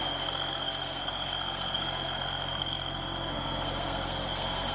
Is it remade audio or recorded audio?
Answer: remade